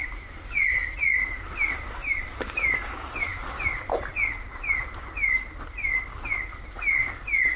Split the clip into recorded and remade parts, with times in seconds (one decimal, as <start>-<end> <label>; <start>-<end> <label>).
0.0-2.0 recorded; 2.0-2.8 remade; 2.8-7.6 recorded